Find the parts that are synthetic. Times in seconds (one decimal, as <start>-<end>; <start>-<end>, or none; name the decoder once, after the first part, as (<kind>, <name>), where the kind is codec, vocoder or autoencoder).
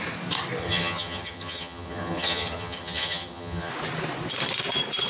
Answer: 0.6-3.7 (vocoder, HiFi-GAN)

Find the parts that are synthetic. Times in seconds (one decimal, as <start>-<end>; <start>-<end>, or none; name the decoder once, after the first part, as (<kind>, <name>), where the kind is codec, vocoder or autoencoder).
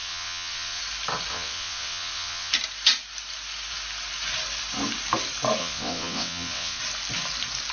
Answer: 0.0-0.8 (vocoder, WaveNeXt); 1.3-2.5; 5.6-6.8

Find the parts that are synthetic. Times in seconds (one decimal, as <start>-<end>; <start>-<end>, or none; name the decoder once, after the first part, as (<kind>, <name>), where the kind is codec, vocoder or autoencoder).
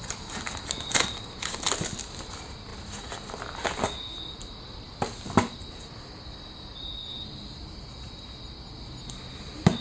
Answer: none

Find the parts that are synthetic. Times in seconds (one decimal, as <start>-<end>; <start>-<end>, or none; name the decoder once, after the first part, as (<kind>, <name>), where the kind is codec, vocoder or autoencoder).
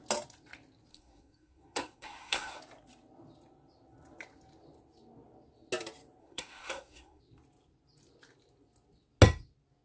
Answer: 0.9-2.6 (codec, SNAC); 6.2-7.2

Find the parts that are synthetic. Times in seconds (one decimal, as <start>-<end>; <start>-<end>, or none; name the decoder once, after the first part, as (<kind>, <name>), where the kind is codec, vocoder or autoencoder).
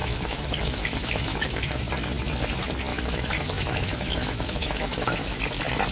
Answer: 0.0-1.8 (autoencoder, DAC-VAE); 2.9-5.4